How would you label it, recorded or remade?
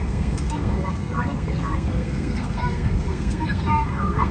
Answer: remade